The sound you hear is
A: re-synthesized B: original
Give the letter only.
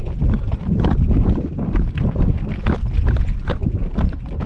B